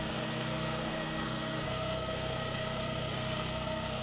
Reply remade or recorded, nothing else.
remade